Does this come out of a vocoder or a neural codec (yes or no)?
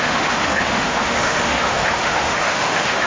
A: yes